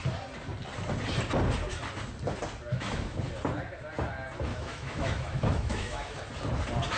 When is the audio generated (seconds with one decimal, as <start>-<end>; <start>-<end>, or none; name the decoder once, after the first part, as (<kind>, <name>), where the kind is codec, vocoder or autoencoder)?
2.7-3.2 (autoencoder, DAC-VAE); 4.5-6.2